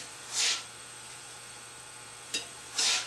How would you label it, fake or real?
fake